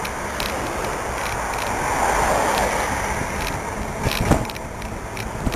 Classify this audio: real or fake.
real